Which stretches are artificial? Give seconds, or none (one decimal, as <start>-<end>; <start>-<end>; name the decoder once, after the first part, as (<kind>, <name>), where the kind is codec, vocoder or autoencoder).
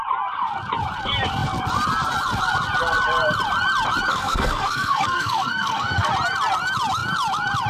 4.1-6.1 (codec, SNAC)